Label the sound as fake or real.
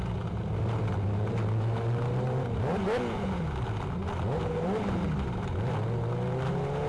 real